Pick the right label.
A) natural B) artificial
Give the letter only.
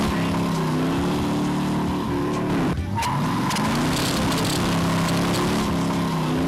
A